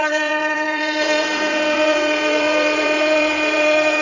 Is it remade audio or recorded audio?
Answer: remade